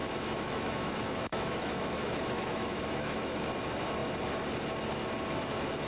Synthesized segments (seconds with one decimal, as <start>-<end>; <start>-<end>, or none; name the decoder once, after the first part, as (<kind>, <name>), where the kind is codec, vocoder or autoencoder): 0.0-3.5 (autoencoder, DAC-VAE)